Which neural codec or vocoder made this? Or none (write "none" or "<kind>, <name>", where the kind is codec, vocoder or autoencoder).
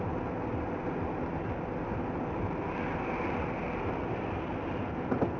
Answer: none